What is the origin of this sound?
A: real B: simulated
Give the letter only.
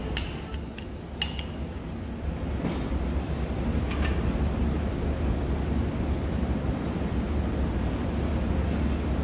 A